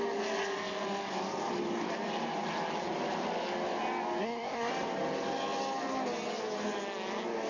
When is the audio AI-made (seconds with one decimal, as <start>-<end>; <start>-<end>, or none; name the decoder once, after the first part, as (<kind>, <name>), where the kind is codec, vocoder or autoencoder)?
4.2-4.7 (codec, SNAC)